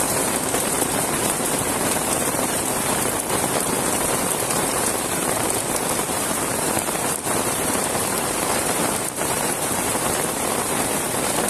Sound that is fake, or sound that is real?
fake